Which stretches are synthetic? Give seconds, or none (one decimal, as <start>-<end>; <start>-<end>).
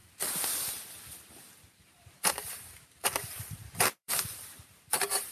1.8-5.3